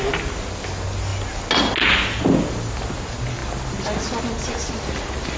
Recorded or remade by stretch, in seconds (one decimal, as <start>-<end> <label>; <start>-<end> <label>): 0.0-5.4 recorded